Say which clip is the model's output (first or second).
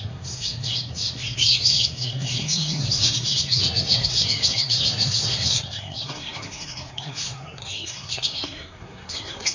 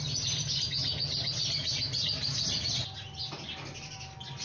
first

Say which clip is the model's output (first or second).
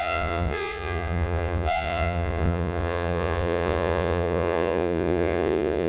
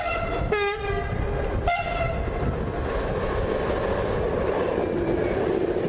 first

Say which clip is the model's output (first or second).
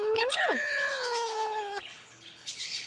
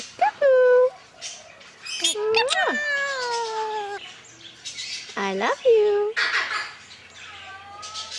first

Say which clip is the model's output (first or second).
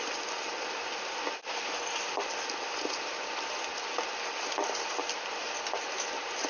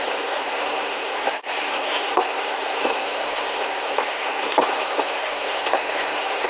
second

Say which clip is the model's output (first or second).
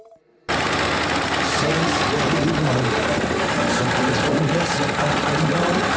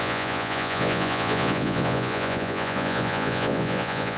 second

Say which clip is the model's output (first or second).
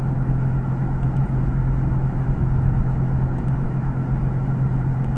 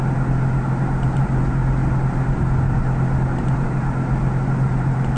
first